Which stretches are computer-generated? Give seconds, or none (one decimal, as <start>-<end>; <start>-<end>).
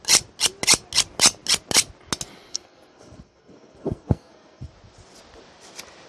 2.5-4.7